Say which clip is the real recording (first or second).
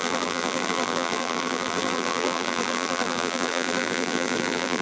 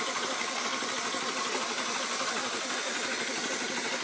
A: second